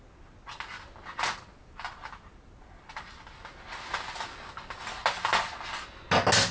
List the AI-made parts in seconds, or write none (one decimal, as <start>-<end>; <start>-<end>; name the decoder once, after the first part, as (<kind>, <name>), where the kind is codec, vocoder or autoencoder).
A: none